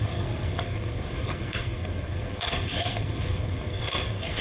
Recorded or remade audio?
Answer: remade